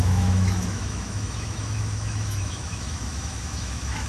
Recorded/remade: remade